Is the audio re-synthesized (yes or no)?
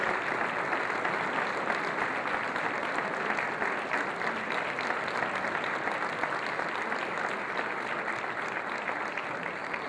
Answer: no